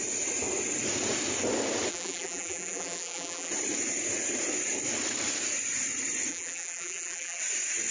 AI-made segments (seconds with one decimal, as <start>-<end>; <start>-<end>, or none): 1.9-3.5; 6.3-7.4